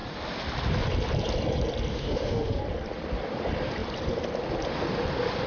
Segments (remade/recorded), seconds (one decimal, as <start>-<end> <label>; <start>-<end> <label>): 0.0-1.9 recorded; 1.9-2.6 remade; 2.6-5.5 recorded